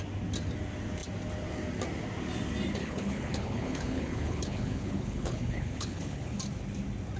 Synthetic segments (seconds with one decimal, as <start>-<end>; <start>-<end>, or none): 2.8-6.4